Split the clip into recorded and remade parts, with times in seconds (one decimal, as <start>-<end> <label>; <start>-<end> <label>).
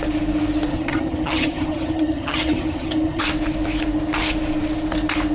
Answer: 0.0-0.7 recorded; 0.7-3.2 remade; 3.2-5.3 recorded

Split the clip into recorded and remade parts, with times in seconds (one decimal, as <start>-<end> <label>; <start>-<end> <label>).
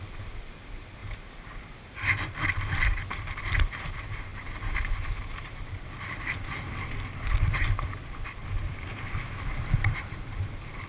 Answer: 0.0-1.0 remade; 1.0-1.7 recorded; 1.7-8.4 remade; 8.4-9.4 recorded; 9.4-10.9 remade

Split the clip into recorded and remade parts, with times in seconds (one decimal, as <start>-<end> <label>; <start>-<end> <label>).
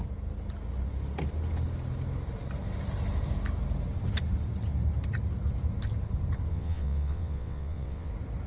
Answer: 0.0-6.5 recorded; 6.5-8.1 remade; 8.1-8.5 recorded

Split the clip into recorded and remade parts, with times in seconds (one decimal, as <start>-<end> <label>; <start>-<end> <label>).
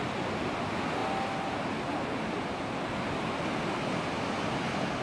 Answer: 0.0-5.0 recorded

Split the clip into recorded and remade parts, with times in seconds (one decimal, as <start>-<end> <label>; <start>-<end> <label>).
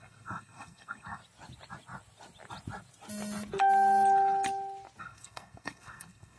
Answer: 0.0-1.2 remade; 1.2-5.0 recorded; 5.0-6.4 remade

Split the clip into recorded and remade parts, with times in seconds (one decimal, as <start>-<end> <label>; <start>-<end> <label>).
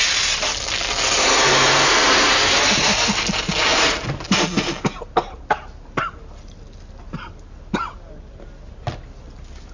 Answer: 0.0-9.7 recorded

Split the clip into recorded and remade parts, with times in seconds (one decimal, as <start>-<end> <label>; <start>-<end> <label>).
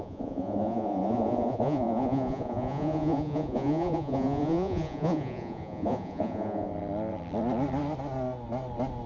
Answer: 0.0-6.7 remade; 6.7-9.1 recorded